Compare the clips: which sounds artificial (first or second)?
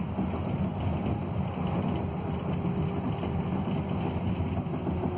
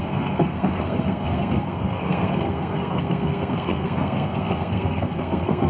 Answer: second